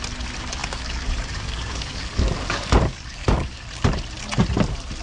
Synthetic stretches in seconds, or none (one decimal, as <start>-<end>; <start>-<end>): 0.6-3.6